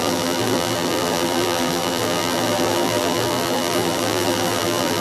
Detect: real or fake fake